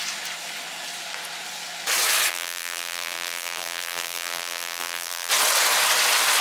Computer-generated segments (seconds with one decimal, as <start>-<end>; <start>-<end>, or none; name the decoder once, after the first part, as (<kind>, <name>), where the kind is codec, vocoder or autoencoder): 2.3-5.3 (vocoder, BigVGAN v2)